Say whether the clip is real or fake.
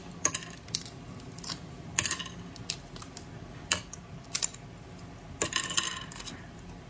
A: real